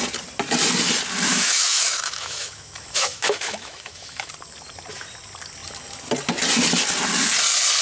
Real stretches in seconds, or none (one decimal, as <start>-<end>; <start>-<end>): 0.0-1.3; 4.3-7.8